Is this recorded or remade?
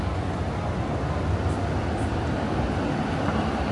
recorded